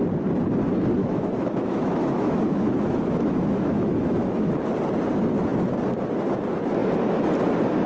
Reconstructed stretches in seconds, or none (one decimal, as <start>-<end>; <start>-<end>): 1.0-4.5